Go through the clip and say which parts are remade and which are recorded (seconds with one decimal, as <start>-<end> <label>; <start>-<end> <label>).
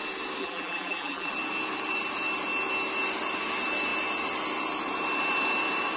0.0-0.4 recorded; 0.4-1.3 remade; 1.3-6.0 recorded